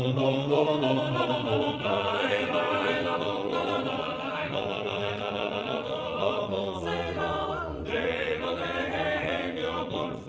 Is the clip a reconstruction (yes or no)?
yes